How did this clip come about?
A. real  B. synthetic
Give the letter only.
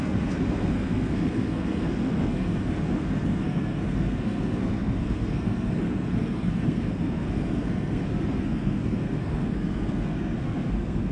B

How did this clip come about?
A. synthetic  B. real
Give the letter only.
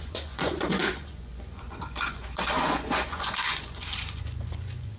A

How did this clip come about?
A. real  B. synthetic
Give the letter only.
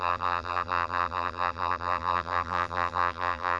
B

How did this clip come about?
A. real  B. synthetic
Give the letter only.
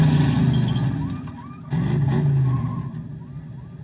A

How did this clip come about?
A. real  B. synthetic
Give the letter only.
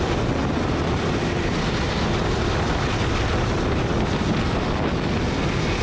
B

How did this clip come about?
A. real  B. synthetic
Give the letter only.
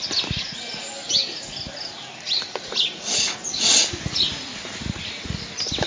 A